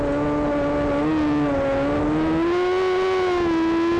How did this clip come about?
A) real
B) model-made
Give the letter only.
A